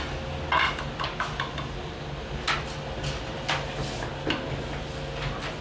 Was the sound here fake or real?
real